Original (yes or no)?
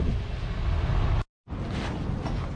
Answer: yes